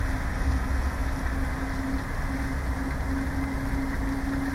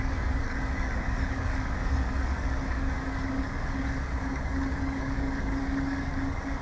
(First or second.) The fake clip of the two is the second